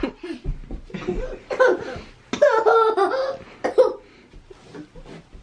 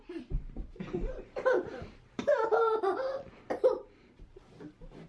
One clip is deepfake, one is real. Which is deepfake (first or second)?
second